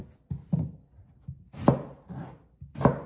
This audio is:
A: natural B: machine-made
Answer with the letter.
A